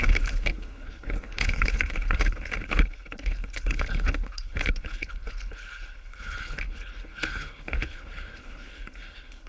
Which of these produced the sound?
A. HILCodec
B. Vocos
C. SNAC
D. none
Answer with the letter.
A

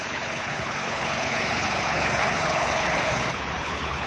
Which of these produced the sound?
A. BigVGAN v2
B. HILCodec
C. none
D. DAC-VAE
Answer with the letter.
B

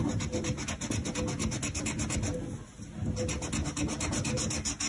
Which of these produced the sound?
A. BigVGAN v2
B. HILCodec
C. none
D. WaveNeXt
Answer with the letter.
C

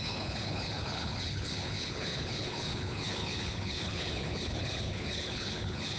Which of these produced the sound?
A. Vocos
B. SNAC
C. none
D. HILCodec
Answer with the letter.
D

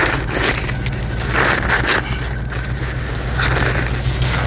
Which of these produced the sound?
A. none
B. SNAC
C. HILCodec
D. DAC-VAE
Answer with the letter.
A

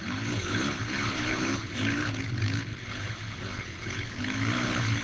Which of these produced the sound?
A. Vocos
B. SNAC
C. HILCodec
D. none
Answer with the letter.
C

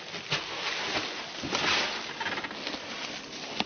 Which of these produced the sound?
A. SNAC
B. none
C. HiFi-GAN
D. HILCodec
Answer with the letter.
B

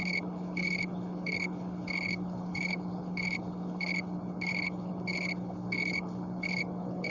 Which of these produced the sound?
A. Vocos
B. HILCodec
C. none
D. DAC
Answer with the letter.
B